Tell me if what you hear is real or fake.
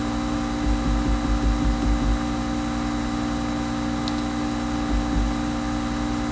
real